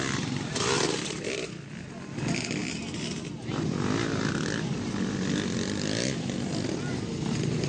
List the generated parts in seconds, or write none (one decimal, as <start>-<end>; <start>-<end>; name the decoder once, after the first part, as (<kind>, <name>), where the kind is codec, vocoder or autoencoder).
none